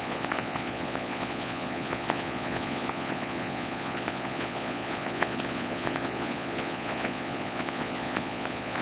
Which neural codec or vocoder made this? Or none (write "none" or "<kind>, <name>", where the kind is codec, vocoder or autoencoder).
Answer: vocoder, Vocos